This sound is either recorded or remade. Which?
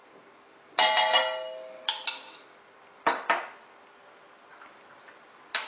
recorded